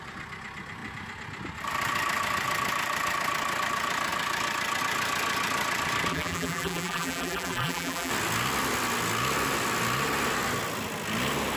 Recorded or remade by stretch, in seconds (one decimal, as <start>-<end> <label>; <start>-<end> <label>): 0.0-6.1 recorded; 6.1-8.1 remade; 8.1-11.6 recorded